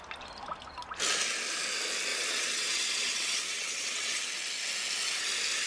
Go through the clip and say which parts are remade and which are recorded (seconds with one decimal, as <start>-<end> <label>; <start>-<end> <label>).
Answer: 0.0-2.1 recorded; 2.1-4.2 remade; 4.2-5.7 recorded